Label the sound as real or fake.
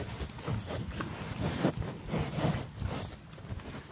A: real